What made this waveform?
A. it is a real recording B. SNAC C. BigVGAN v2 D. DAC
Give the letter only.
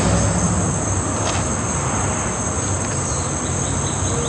A